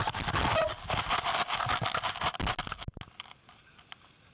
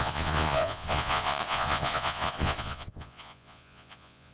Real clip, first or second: first